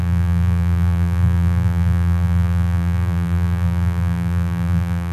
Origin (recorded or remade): remade